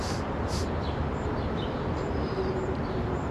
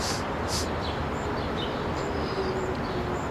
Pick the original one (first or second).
second